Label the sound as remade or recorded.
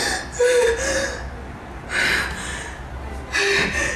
recorded